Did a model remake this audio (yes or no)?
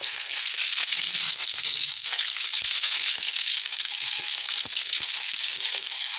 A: yes